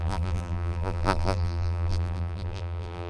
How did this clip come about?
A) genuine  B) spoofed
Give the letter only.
B